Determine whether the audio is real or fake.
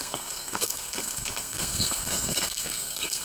fake